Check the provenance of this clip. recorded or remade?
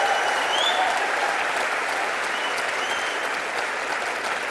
recorded